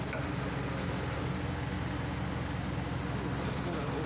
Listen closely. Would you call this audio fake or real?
real